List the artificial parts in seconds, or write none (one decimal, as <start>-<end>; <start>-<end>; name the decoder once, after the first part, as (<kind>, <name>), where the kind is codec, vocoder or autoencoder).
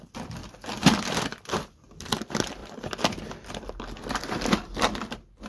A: 0.4-0.9 (vocoder, BigVGAN v2); 1.3-2.0; 2.6-3.1